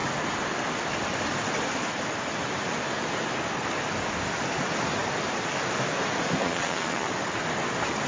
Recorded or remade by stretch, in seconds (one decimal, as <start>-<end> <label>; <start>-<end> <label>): 0.0-6.4 recorded; 6.4-7.1 remade; 7.1-8.1 recorded